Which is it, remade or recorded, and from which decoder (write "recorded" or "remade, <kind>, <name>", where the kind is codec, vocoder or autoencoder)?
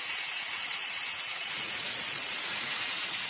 remade, vocoder, Vocos